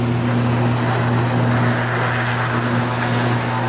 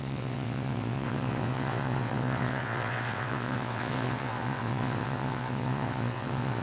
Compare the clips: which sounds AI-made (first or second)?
second